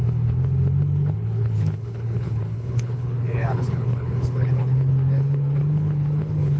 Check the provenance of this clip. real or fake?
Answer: fake